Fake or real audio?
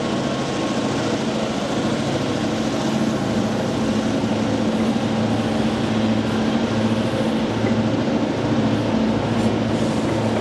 real